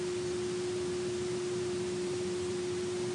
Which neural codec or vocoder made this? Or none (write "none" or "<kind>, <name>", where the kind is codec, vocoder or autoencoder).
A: vocoder, BigVGAN v2